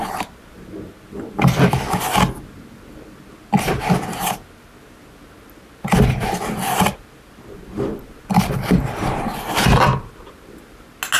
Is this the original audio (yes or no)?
yes